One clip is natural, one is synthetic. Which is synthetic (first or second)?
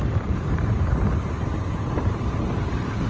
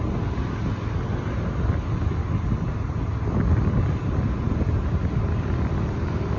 first